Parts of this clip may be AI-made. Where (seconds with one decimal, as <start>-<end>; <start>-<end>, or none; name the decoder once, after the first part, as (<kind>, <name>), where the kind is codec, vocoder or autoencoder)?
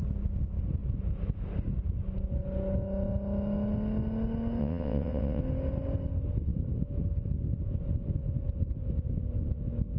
4.6-5.4 (vocoder, WaveNeXt)